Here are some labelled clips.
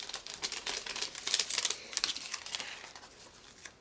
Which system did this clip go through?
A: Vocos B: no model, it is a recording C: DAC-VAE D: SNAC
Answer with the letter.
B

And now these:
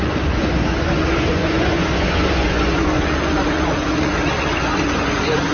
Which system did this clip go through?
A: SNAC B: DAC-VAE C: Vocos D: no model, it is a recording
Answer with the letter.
C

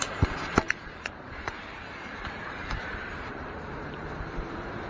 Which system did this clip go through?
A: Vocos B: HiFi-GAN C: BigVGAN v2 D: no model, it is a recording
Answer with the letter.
C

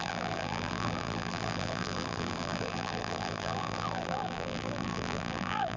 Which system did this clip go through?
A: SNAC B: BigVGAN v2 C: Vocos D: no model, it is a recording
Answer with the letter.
B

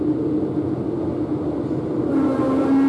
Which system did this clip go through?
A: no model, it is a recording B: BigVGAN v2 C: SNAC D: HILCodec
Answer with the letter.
A